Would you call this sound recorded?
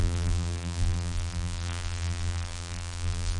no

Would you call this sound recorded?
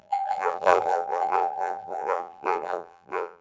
no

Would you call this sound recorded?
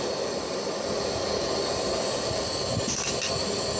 yes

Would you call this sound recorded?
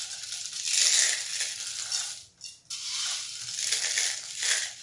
yes